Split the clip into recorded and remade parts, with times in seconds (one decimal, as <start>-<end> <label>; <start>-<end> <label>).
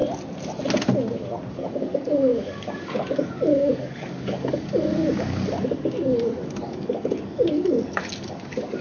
0.0-1.5 recorded; 1.5-8.8 remade